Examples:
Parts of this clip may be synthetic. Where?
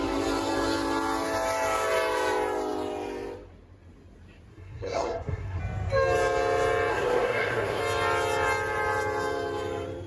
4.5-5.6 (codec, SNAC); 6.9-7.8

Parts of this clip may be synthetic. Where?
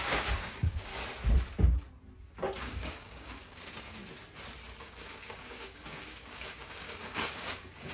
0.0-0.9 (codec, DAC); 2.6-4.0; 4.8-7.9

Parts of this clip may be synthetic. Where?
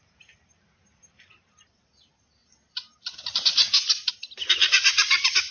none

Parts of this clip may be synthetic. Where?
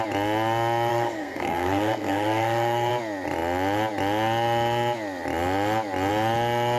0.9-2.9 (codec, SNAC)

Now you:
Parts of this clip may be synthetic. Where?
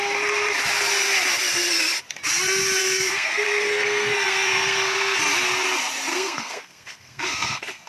2.8-5.2 (codec, SNAC); 6.1-7.9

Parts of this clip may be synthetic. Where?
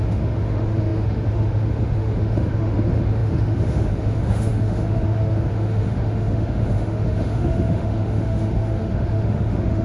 0.0-9.8 (autoencoder, DAC-VAE)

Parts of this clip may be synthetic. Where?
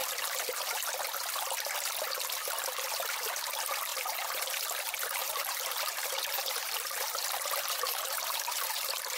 5.2-9.2 (vocoder, BigVGAN v2)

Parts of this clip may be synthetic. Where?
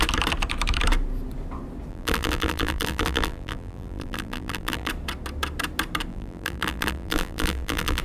1.9-4.9 (vocoder, BigVGAN v2); 6.1-8.0